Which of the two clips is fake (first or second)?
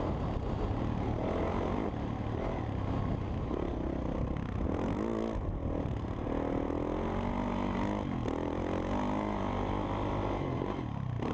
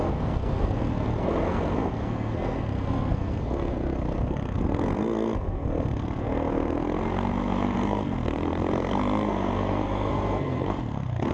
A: second